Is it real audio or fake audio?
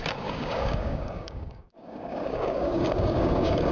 fake